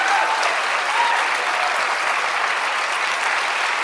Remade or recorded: recorded